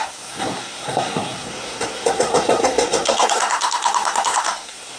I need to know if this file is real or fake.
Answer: fake